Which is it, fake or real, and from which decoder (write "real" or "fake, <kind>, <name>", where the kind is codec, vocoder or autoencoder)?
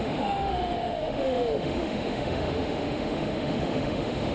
fake, autoencoder, DAC-VAE